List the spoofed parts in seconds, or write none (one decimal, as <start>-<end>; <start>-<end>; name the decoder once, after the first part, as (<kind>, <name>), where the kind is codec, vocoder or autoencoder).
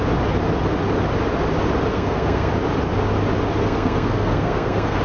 1.9-2.5 (codec, SNAC); 3.6-5.0